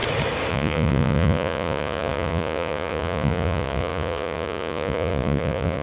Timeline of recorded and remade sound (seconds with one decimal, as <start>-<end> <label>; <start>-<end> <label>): 0.0-0.5 recorded; 0.5-5.8 remade